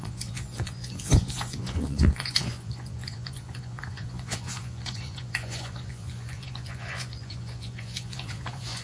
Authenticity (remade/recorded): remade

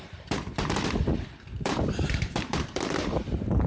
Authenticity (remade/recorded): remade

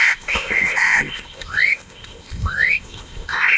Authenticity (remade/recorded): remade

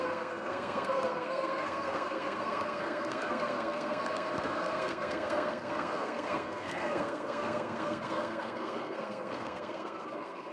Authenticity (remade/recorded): remade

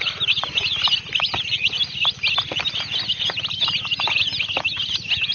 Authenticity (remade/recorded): recorded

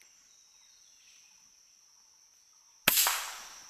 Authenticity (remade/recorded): recorded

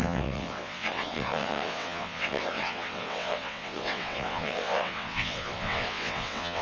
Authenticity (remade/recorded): remade